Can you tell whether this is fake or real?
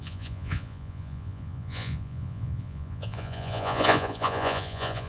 fake